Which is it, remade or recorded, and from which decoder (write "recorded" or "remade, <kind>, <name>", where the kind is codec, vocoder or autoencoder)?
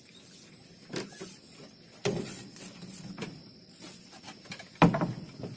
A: recorded